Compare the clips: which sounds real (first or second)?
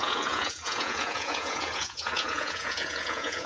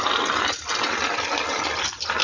second